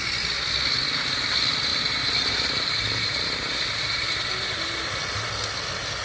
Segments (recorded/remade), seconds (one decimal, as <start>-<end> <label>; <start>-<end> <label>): 0.0-1.7 recorded; 1.7-5.3 remade; 5.3-6.0 recorded